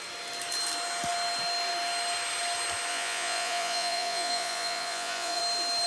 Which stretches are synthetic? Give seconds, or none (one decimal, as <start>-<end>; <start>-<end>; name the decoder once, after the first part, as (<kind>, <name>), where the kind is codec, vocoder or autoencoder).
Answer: 2.9-5.4 (vocoder, Vocos)